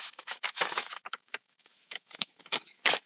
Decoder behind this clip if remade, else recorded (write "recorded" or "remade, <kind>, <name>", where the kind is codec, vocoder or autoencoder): remade, autoencoder, DAC-VAE